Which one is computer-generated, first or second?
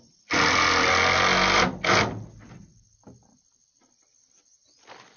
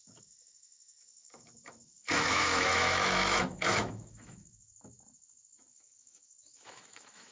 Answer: second